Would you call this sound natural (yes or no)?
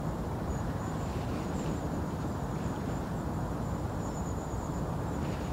no